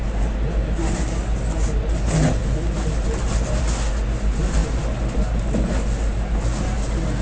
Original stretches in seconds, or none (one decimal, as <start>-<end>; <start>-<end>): 0.0-7.2